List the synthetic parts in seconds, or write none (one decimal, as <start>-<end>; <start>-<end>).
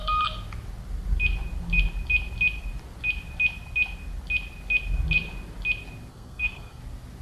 6.1-6.8